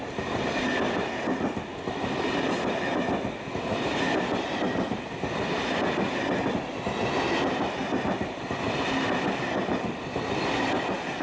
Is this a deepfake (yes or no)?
no